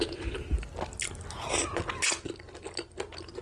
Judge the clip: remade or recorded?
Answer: recorded